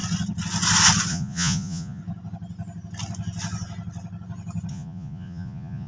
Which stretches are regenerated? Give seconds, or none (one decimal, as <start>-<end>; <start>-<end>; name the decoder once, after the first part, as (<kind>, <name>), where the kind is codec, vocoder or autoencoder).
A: 1.1-2.0 (vocoder, Vocos); 4.7-5.9